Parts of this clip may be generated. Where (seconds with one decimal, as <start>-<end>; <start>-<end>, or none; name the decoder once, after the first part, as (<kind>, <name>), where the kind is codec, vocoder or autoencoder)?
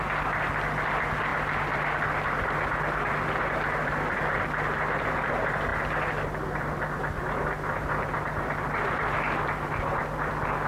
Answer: none